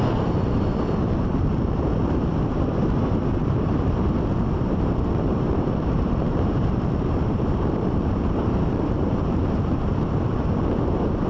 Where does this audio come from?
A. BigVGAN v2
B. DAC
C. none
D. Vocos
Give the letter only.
A